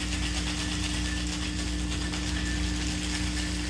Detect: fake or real real